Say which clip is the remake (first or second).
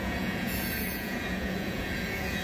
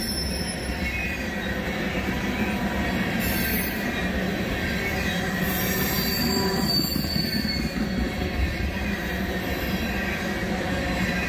first